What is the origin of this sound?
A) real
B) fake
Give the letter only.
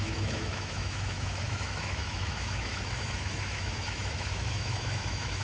B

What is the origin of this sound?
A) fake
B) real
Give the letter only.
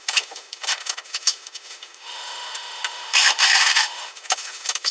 A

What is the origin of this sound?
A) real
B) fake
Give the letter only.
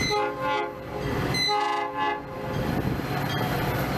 A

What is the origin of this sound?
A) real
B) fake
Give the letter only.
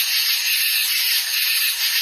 A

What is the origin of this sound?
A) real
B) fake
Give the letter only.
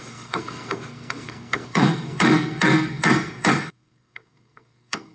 B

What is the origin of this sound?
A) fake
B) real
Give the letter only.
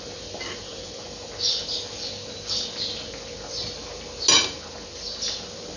B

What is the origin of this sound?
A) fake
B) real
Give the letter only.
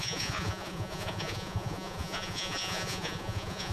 A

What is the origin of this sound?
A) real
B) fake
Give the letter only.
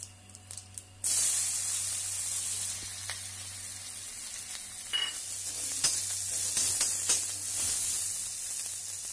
A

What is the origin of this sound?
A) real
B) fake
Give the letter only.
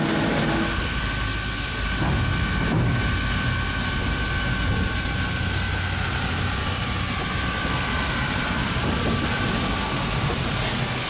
A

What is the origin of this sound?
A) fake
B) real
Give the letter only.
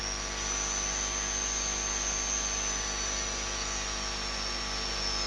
B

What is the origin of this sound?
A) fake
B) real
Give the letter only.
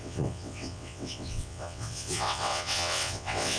A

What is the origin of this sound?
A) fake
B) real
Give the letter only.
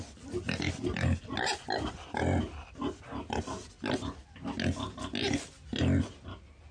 B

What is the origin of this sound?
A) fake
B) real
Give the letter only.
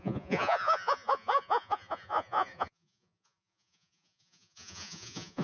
A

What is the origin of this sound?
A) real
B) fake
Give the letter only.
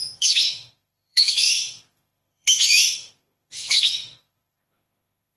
B